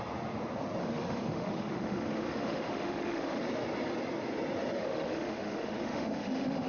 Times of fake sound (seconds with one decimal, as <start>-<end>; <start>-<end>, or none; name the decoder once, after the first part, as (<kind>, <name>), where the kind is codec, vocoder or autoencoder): 0.8-3.4 (autoencoder, DAC-VAE); 4.8-6.7